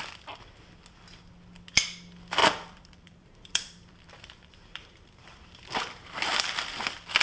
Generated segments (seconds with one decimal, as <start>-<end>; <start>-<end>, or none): 2.4-6.6